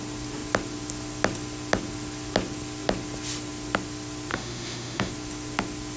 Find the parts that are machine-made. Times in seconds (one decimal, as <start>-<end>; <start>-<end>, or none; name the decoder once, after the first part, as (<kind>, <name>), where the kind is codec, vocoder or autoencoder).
4.3-5.1 (autoencoder, DAC-VAE)